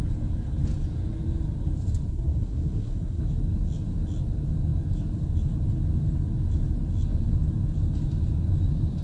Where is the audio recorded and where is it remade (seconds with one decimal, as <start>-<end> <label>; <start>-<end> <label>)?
0.0-2.1 recorded; 2.1-3.2 remade; 3.2-9.0 recorded